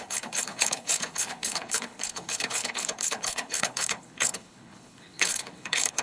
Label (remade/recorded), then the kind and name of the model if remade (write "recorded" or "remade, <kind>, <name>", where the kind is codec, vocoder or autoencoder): remade, codec, HILCodec